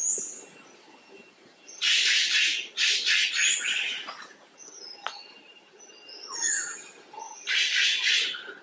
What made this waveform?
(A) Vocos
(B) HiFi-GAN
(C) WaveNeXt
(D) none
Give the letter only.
D